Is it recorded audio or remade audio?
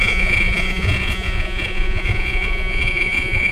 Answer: remade